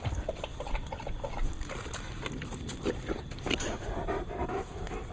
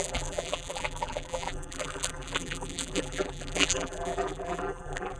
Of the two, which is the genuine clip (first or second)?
first